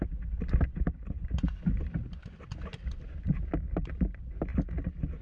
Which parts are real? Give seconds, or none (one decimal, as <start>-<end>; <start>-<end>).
0.0-5.2